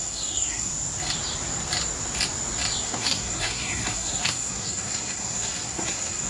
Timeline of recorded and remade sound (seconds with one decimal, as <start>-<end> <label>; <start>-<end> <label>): 0.0-0.7 remade; 0.7-2.8 recorded; 2.8-6.3 remade